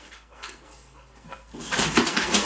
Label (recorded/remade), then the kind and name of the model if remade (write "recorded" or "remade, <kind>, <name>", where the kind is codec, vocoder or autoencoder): remade, codec, SNAC